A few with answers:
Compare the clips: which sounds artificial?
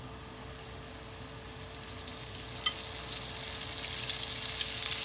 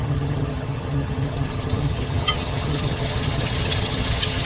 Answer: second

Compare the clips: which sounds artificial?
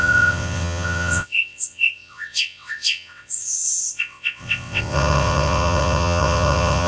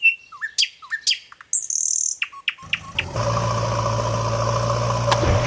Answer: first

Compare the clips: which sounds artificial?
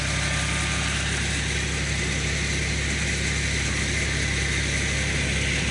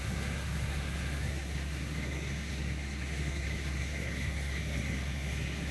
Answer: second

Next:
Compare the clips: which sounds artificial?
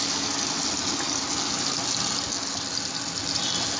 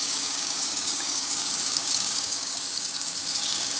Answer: second